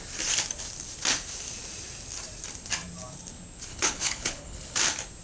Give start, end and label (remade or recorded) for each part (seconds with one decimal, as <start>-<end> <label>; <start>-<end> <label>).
0.0-3.7 recorded; 3.7-4.8 remade; 4.8-5.2 recorded